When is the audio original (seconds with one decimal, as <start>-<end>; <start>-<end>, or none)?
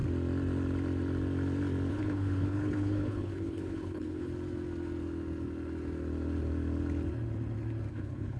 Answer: 0.0-1.9; 4.3-7.9